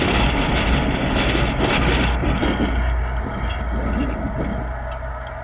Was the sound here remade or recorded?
recorded